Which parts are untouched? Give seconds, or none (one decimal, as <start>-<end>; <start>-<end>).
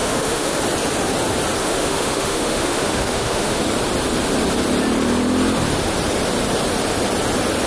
0.6-1.6; 3.6-7.7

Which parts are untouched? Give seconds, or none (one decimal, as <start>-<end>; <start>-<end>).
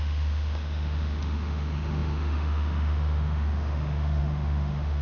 none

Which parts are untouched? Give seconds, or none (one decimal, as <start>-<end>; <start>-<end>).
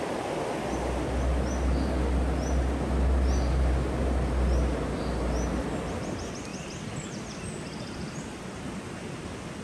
0.0-9.6